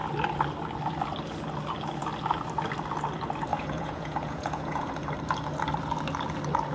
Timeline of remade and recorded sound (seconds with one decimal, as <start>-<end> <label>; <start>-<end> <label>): 0.0-3.5 recorded; 3.5-4.9 remade; 4.9-6.7 recorded